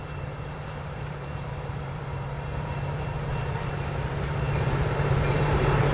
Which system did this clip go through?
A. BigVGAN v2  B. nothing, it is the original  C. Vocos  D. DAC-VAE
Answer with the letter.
A